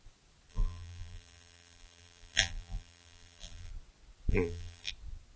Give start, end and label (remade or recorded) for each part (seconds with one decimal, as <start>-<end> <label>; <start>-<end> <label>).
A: 0.0-0.5 recorded; 0.5-3.7 remade; 3.7-4.3 recorded; 4.3-4.9 remade; 4.9-5.4 recorded